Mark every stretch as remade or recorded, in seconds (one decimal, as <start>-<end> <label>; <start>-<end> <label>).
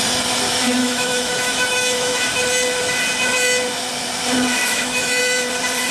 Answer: 0.0-0.8 recorded; 0.8-2.3 remade; 2.3-4.6 recorded; 4.6-5.2 remade; 5.2-5.9 recorded